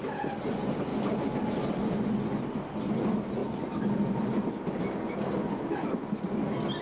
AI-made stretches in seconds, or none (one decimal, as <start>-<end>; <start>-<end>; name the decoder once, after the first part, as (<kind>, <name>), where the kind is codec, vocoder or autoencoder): none